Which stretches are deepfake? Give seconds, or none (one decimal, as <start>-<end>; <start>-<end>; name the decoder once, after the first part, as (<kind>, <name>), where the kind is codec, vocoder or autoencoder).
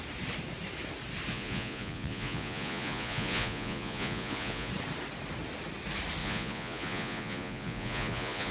1.3-4.7 (vocoder, Vocos); 6.2-8.5